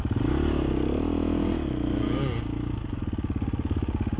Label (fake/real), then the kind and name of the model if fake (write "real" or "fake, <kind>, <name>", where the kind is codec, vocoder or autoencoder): real